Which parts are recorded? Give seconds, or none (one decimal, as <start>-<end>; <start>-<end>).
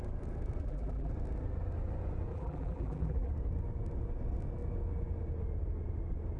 0.0-0.6; 1.1-2.3; 3.3-6.4